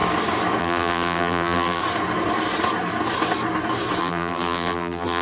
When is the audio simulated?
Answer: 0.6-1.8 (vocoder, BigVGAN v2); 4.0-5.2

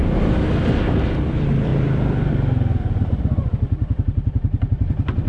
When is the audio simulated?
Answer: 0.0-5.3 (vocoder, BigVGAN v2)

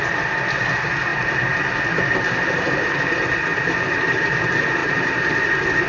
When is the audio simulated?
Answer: 1.1-4.0 (vocoder, BigVGAN v2); 4.8-5.4

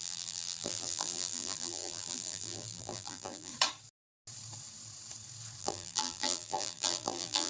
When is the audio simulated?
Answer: 0.0-3.5 (vocoder, BigVGAN v2); 5.6-7.5

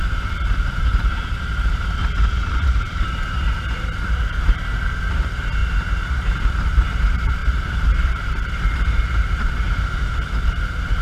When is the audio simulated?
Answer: 0.0-4.6 (vocoder, BigVGAN v2); 5.1-11.0

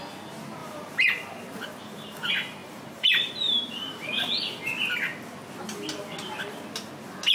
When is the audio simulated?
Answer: 0.6-1.4 (vocoder, BigVGAN v2); 2.6-4.4